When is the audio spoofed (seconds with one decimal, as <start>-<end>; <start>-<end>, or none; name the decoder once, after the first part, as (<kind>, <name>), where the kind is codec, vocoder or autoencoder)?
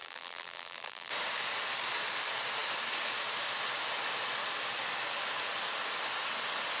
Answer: 0.0-1.1 (vocoder, BigVGAN v2)